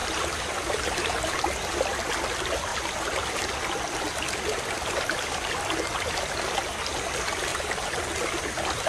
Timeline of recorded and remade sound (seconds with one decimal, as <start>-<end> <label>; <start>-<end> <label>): 0.0-1.4 remade; 1.4-8.9 recorded